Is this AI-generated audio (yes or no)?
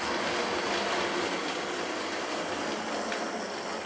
no